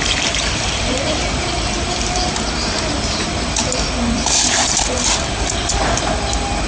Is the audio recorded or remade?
remade